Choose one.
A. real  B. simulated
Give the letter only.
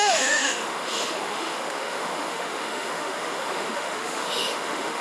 B